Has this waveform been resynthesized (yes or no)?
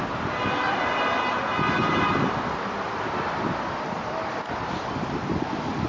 no